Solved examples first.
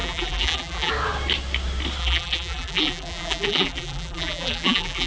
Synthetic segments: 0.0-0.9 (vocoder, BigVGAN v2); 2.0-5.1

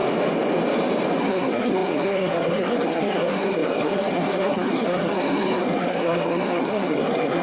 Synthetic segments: 1.2-7.4 (codec, SNAC)

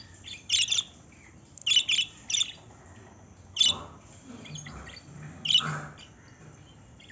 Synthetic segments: none

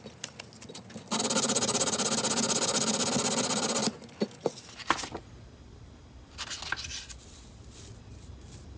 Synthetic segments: none

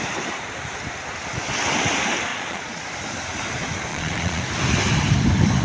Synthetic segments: 2.3-2.8 (vocoder, Vocos); 3.9-4.4

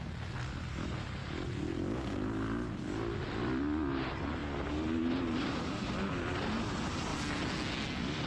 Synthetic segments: 0.0-1.7 (vocoder, BigVGAN v2); 3.4-4.4; 5.7-7.1